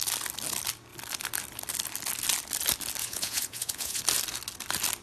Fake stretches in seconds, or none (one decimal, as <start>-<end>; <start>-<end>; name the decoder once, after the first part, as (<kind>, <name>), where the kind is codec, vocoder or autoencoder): 3.0-4.0 (vocoder, Vocos)